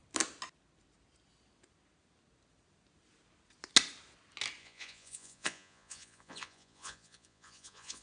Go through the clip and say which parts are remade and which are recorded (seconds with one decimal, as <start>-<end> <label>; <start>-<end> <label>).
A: 0.0-4.6 recorded; 4.6-8.0 remade